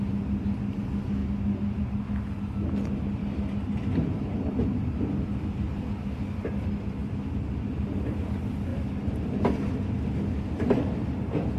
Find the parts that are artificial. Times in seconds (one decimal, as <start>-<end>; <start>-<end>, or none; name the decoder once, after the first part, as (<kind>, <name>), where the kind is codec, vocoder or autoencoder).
7.0-7.6 (vocoder, BigVGAN v2)